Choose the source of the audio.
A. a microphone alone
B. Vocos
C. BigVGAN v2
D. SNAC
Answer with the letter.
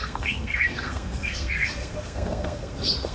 D